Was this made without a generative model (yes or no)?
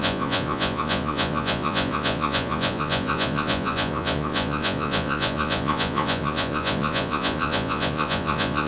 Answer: no